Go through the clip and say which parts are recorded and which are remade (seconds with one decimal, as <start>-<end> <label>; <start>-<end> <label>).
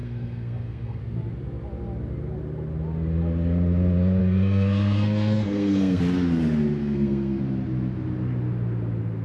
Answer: 0.0-1.0 remade; 1.0-4.2 recorded; 4.2-6.0 remade; 6.0-6.8 recorded; 6.8-7.4 remade; 7.4-9.2 recorded